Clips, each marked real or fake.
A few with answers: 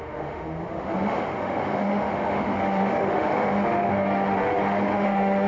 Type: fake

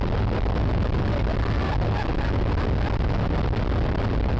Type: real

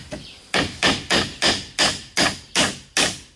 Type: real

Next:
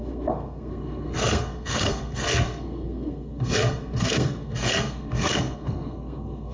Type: fake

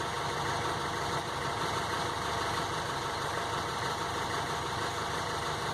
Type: real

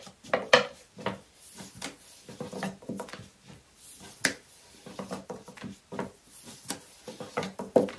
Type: real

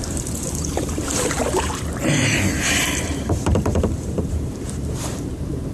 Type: fake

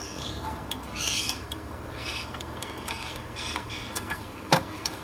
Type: fake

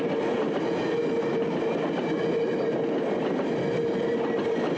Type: real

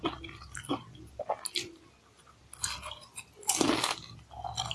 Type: real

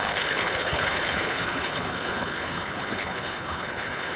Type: fake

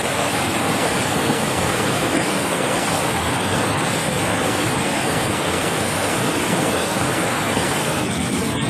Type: fake